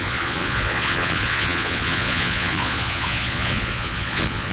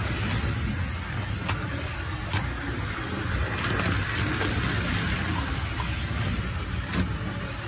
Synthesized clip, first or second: first